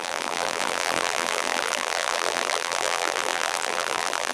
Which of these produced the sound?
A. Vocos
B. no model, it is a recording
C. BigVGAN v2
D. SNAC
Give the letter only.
C